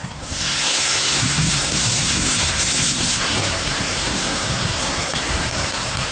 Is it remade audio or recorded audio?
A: remade